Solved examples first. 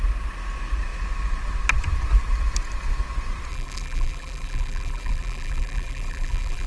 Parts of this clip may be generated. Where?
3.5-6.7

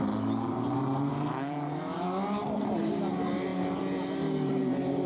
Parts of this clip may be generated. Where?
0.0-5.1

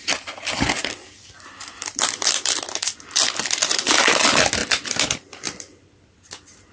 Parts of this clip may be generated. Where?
0.8-3.9; 4.6-6.0

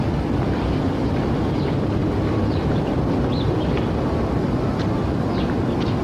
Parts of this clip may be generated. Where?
2.0-2.8

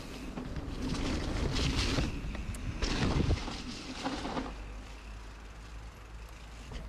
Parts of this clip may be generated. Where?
3.4-4.2